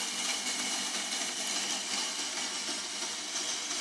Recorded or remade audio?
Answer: recorded